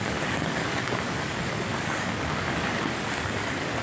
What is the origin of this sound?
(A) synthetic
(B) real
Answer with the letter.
A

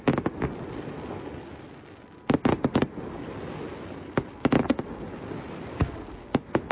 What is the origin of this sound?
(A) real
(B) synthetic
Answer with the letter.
A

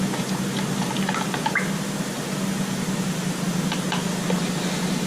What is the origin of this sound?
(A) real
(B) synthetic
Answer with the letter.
A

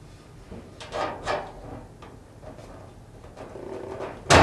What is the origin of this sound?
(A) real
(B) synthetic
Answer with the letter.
A